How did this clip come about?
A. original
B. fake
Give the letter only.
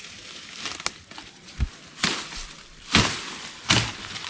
A